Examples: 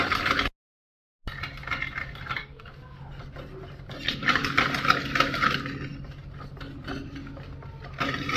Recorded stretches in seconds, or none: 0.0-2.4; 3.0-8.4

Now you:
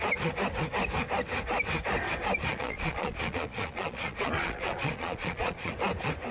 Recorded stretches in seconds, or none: 0.0-2.5; 5.7-6.3

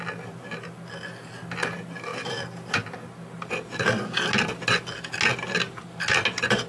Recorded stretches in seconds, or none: 0.0-6.7

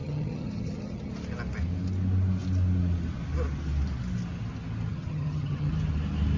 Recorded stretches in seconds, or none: 1.1-4.9; 5.7-6.4